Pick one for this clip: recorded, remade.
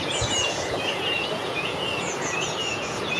remade